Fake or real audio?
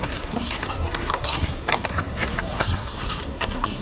fake